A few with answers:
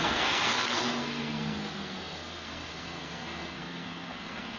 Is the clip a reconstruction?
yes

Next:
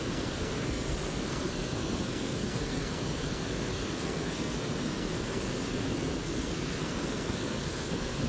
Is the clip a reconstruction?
yes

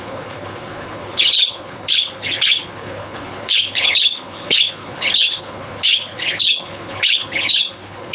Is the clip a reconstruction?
yes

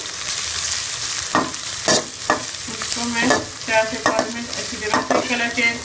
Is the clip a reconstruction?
no